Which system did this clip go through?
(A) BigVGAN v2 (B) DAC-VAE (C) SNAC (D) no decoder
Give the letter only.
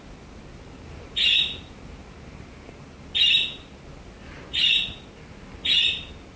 D